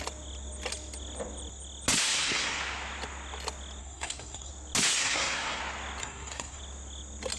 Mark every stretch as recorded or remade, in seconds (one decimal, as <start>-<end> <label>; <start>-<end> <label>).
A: 0.0-2.0 recorded; 2.0-2.6 remade; 2.6-3.8 recorded; 3.8-4.5 remade; 4.5-4.9 recorded; 4.9-5.6 remade; 5.6-6.0 recorded; 6.0-6.6 remade; 6.6-7.4 recorded